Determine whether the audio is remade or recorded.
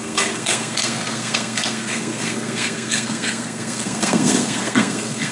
remade